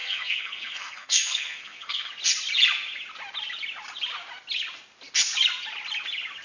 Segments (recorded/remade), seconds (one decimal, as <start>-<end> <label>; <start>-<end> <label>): 0.0-2.1 remade; 2.1-6.4 recorded